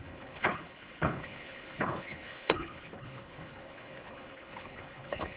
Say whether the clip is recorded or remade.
remade